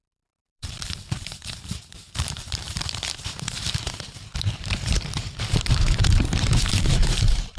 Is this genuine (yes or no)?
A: no